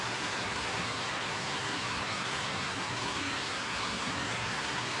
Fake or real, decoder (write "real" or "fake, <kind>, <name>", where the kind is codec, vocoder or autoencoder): fake, codec, SNAC